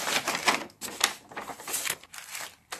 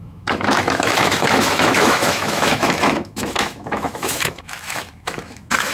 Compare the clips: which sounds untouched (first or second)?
first